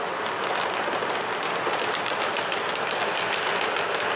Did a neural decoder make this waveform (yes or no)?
no